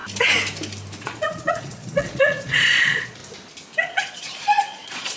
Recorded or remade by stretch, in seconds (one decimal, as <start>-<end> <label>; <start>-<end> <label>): 0.0-1.0 recorded; 1.0-3.2 remade; 3.2-3.8 recorded; 3.8-5.2 remade